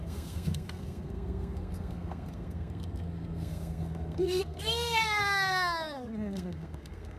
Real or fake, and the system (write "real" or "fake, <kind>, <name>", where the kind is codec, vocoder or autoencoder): fake, codec, SNAC